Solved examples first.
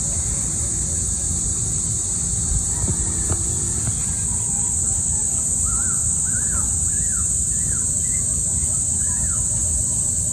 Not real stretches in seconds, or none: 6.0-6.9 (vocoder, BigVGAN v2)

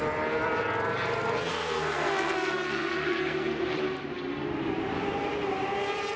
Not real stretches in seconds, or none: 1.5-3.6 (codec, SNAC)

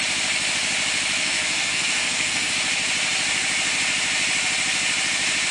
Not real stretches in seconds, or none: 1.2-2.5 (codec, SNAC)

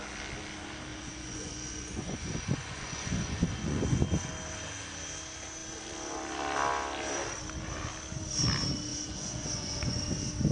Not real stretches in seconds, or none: 0.9-4.0 (vocoder, Vocos); 8.9-10.0